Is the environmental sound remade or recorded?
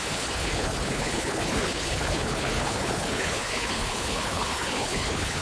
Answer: remade